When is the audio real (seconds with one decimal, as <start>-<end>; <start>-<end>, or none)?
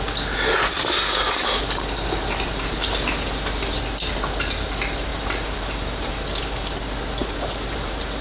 0.0-1.1; 3.3-5.1; 6.1-7.2